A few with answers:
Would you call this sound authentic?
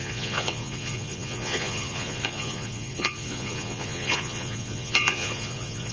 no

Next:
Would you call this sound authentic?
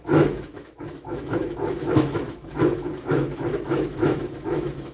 no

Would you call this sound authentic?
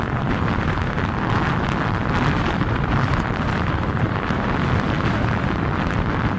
yes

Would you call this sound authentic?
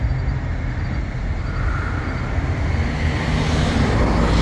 yes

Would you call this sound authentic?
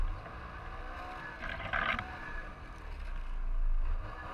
yes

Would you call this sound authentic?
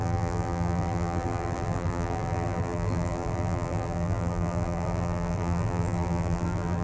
no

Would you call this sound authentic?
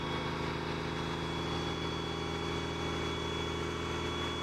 yes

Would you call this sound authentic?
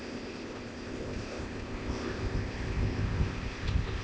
no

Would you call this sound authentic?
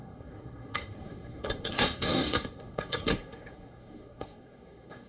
no